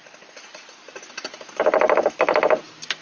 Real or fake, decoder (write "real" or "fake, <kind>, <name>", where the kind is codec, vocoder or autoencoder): real